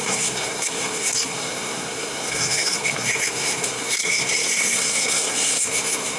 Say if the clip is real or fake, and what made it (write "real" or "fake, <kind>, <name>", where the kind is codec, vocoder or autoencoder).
fake, codec, SNAC